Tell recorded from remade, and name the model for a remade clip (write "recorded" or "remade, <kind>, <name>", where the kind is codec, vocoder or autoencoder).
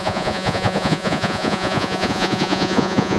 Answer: remade, vocoder, Vocos